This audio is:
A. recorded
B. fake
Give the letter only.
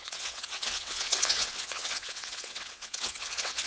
B